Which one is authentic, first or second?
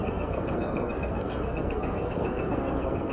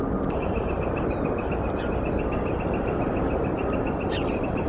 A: second